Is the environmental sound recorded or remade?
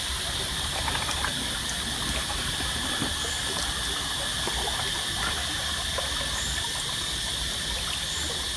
recorded